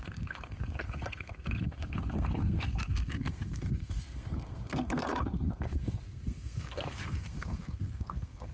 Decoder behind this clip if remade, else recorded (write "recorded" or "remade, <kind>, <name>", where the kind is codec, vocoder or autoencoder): remade, codec, SNAC